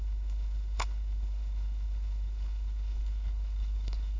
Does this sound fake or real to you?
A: fake